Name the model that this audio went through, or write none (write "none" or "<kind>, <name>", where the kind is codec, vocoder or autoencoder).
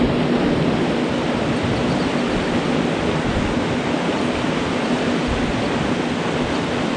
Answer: none